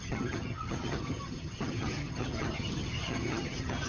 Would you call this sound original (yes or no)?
no